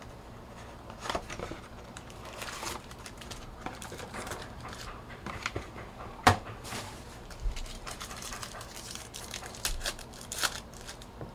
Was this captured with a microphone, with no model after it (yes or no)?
no